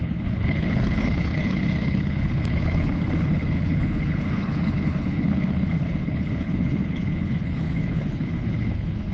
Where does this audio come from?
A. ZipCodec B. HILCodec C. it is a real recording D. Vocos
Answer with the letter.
B